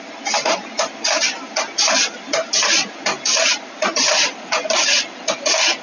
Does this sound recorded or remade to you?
recorded